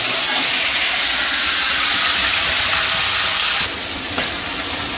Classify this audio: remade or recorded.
recorded